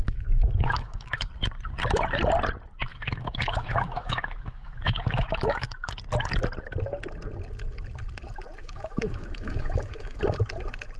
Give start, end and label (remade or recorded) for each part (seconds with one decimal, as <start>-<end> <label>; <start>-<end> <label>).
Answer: 0.0-1.3 remade; 1.3-2.9 recorded; 2.9-5.9 remade; 5.9-8.6 recorded; 8.6-10.2 remade; 10.2-11.0 recorded